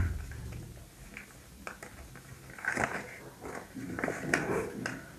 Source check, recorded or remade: recorded